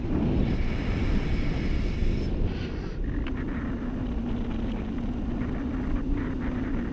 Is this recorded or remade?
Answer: recorded